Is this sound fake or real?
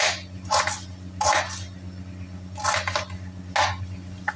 real